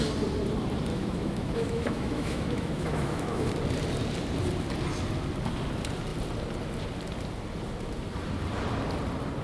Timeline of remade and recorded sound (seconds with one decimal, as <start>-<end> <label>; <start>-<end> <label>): 0.0-0.9 recorded; 0.9-3.5 remade; 3.5-9.4 recorded